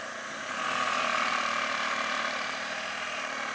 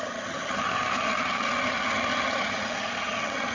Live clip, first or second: first